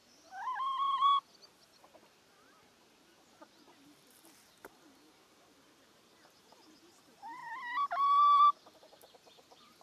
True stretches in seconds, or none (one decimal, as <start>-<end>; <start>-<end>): 0.0-3.3; 7.4-7.9